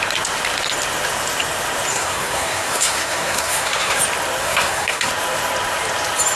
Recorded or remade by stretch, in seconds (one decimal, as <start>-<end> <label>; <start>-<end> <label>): 0.0-1.9 recorded; 1.9-4.0 remade; 4.0-4.4 recorded; 4.4-5.1 remade; 5.1-6.4 recorded